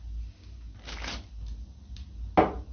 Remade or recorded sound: recorded